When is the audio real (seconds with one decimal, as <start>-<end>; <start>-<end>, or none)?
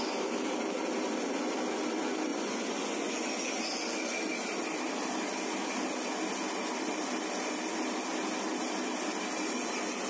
0.0-2.3; 3.1-10.1